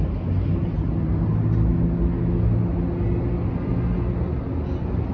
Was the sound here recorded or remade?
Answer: recorded